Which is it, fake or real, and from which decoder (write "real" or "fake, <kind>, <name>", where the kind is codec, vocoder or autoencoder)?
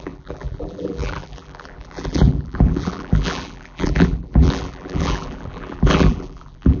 fake, vocoder, BigVGAN v2